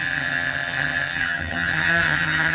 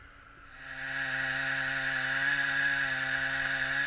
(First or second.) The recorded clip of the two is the second